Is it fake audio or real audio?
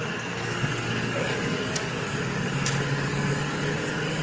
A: fake